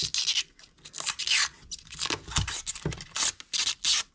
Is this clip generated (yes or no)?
no